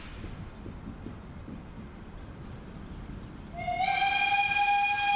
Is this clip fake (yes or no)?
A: no